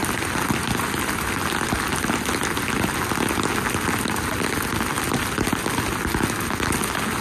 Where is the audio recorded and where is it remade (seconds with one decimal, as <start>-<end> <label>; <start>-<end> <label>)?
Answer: 0.0-3.0 remade; 3.0-7.2 recorded

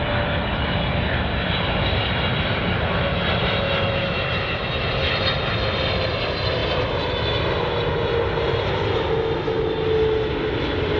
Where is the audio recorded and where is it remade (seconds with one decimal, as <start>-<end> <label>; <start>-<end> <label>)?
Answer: 0.0-11.0 recorded